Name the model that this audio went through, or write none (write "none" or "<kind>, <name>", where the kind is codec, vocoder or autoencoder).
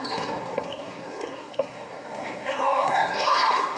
codec, SNAC